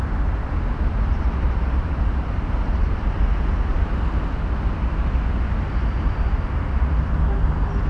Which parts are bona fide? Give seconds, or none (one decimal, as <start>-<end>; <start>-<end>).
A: 0.0-1.1; 3.0-3.7; 4.3-7.9